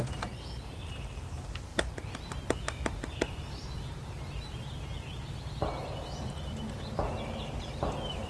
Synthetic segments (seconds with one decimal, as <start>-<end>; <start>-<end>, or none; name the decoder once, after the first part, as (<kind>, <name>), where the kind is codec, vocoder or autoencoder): none